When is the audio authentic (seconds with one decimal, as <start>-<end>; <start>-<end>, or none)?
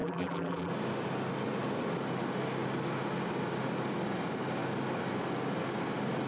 0.7-6.3